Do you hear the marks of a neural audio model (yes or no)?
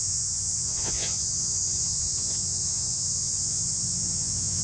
yes